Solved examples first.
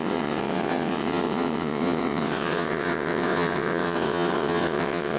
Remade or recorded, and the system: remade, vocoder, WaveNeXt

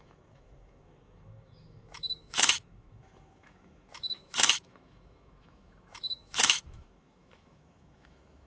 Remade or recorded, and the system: remade, autoencoder, DAC-VAE